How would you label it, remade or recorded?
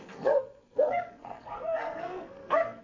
remade